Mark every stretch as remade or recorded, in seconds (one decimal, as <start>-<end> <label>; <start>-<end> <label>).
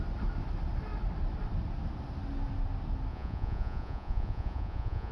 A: 0.0-3.1 recorded; 3.1-5.1 remade